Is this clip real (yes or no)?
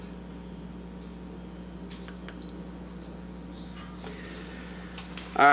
yes